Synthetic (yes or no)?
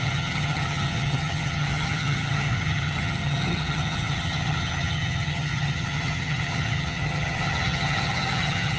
yes